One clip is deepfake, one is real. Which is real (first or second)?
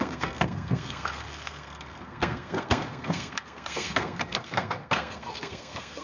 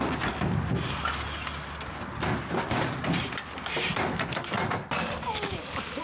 second